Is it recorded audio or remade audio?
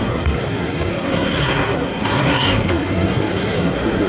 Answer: remade